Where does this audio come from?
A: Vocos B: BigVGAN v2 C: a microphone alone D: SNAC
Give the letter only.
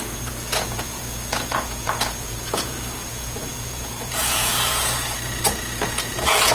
A